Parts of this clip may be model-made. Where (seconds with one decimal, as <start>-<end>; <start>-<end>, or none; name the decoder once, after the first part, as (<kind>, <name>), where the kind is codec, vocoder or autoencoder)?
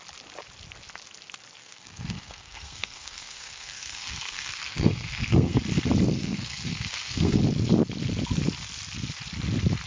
1.6-5.6 (codec, SNAC); 6.2-7.4